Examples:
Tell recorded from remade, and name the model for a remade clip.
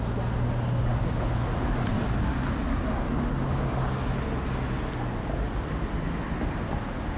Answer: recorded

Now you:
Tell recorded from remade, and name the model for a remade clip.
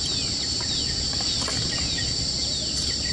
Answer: recorded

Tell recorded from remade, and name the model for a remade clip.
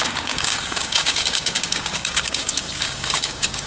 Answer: remade, codec, DAC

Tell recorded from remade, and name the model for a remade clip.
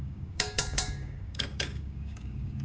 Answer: remade, codec, DAC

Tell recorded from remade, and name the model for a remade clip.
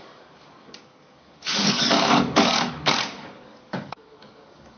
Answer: remade, codec, DAC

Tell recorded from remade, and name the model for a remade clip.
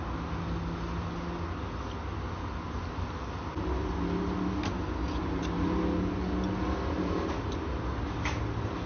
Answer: recorded